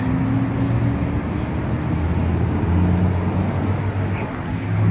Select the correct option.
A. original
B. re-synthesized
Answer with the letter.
A